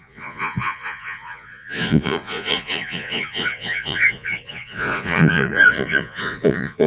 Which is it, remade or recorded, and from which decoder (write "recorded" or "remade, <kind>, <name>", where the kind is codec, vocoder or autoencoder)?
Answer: remade, vocoder, Vocos